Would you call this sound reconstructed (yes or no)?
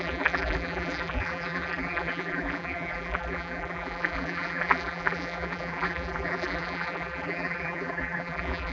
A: yes